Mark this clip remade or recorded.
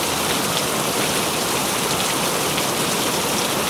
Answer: remade